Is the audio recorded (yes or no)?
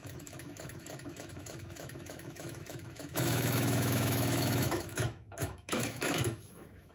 no